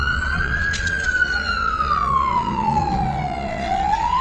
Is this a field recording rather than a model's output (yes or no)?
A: no